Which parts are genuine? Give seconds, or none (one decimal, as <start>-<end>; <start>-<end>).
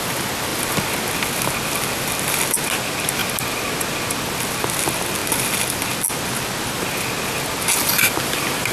0.0-8.7